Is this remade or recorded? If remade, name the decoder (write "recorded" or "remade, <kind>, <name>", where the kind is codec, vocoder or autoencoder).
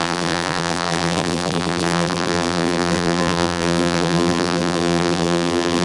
remade, vocoder, BigVGAN v2